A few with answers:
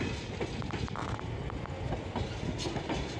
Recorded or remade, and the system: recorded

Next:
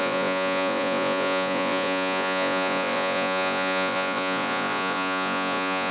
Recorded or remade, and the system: remade, vocoder, Vocos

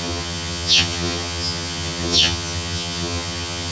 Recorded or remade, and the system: remade, vocoder, HiFi-GAN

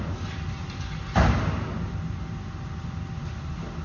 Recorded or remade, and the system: recorded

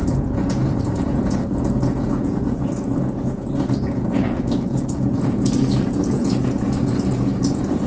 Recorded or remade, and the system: remade, vocoder, Vocos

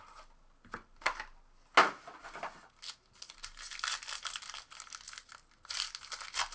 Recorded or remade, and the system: recorded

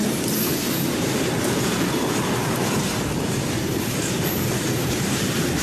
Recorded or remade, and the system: remade, vocoder, BigVGAN v2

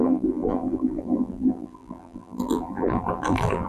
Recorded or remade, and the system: remade, vocoder, BigVGAN v2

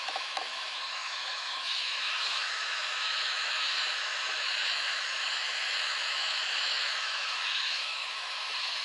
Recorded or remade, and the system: remade, autoencoder, DAC-VAE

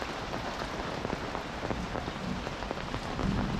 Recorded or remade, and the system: recorded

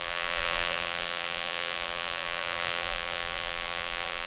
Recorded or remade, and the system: remade, vocoder, BigVGAN v2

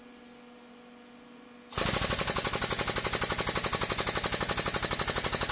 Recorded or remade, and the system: recorded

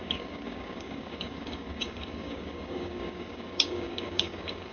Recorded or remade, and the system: remade, codec, DAC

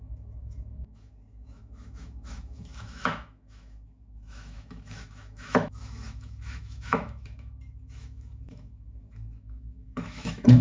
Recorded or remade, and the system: remade, autoencoder, DAC-VAE